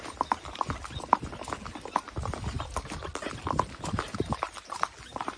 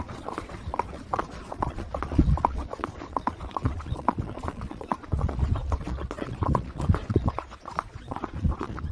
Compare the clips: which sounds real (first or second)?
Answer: first